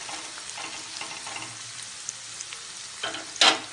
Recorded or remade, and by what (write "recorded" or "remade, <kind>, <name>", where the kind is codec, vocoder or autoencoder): recorded